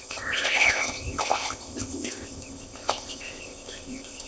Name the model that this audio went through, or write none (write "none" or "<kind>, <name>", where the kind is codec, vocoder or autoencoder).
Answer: codec, ZipCodec